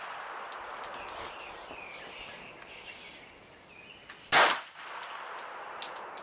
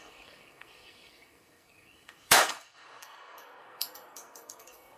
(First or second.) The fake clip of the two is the second